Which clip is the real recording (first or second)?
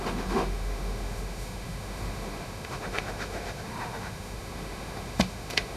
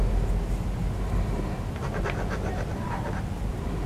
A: second